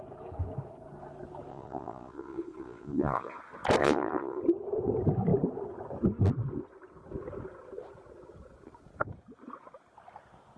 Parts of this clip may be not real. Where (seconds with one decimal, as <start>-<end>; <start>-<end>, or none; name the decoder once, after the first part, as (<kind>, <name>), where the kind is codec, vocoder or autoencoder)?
1.5-3.4 (vocoder, Vocos); 3.8-4.4